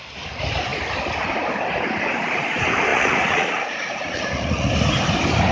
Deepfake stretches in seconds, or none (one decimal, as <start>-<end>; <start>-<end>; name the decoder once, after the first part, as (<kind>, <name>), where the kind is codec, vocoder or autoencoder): 2.9-4.7 (vocoder, Vocos)